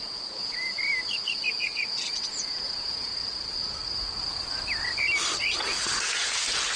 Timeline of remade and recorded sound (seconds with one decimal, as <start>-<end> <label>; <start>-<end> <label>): 0.0-3.2 remade; 3.2-6.0 recorded; 6.0-6.8 remade

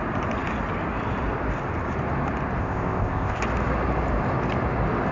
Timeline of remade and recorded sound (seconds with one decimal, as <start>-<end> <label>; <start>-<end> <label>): 0.0-2.6 recorded; 2.6-3.4 remade; 3.4-5.1 recorded

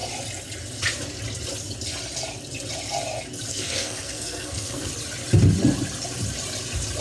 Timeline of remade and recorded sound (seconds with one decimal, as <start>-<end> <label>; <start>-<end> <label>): 0.0-3.5 recorded; 3.5-4.9 remade; 4.9-7.0 recorded

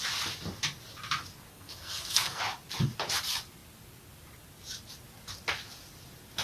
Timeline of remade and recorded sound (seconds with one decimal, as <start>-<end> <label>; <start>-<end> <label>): 0.0-1.5 recorded; 1.5-2.4 remade; 2.4-6.4 recorded

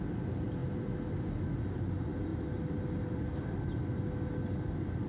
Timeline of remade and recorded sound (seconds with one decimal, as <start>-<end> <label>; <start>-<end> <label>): 0.0-5.1 recorded

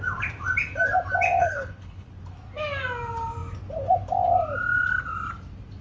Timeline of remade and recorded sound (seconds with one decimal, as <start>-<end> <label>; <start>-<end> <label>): 0.0-1.4 recorded; 1.4-2.1 remade; 2.1-5.8 recorded

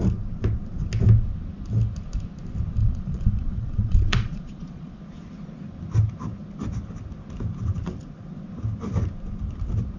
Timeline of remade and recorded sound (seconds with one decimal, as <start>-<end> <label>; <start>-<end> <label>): 0.0-2.8 recorded; 2.8-5.0 remade; 5.0-10.0 recorded

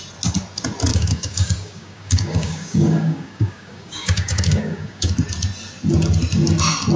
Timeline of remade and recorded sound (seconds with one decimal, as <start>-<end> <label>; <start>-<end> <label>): 0.0-0.9 recorded; 0.9-5.1 remade; 5.1-7.0 recorded